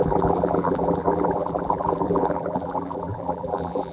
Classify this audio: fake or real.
fake